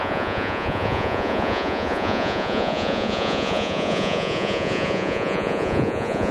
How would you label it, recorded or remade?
remade